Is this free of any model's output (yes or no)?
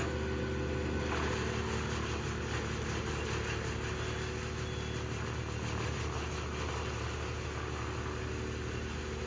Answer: yes